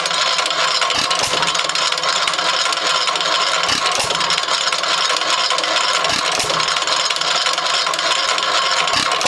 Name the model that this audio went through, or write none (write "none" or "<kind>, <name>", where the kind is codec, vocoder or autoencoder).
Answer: none